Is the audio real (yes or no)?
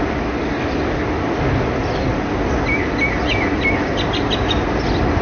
yes